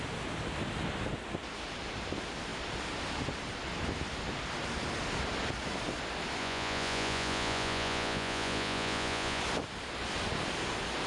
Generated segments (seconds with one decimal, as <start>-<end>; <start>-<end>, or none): 6.4-9.4